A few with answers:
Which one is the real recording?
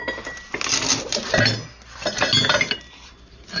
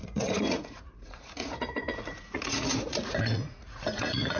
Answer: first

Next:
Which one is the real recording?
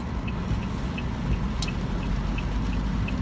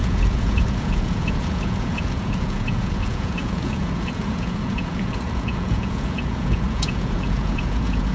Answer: first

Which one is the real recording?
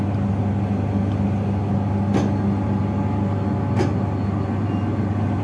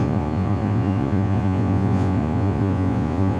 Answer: first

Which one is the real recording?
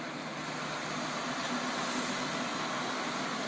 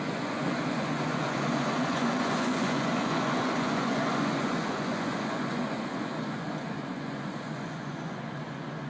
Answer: first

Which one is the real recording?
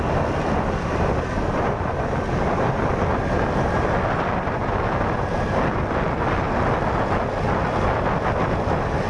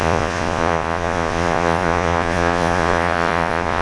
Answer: first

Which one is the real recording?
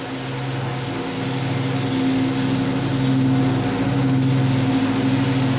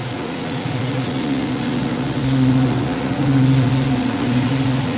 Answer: first